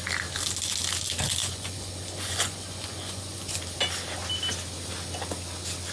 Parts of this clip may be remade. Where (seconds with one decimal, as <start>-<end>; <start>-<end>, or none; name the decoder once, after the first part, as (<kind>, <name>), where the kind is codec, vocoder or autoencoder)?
1.4-3.6 (vocoder, Vocos)

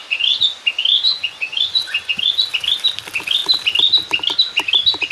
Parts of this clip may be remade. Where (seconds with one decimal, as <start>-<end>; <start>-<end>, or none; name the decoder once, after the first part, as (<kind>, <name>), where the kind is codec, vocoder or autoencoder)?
0.0-0.6 (vocoder, Vocos); 1.1-2.5

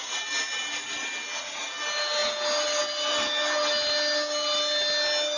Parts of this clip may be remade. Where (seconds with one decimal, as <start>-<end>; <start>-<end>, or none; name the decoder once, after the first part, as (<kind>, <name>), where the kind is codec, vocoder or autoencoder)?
none

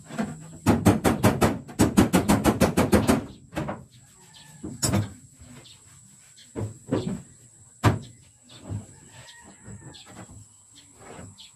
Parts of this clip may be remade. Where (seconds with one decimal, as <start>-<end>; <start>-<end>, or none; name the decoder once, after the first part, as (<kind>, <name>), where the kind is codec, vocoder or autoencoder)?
none

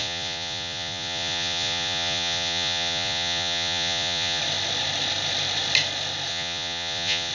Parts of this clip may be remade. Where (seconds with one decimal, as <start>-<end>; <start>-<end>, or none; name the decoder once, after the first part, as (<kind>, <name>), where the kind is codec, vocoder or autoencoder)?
0.0-4.4 (vocoder, Vocos); 6.3-7.3

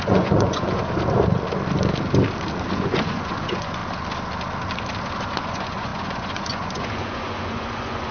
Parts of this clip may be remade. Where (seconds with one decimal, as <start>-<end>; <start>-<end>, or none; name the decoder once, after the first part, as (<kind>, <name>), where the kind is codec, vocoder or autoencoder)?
0.0-0.8 (vocoder, Vocos); 2.7-3.8; 5.4-8.1

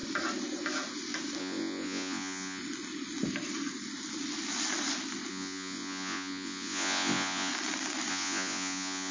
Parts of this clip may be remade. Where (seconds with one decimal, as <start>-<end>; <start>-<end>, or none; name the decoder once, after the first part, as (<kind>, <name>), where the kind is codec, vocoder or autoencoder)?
1.4-2.6 (vocoder, Vocos); 5.3-7.5; 8.1-9.1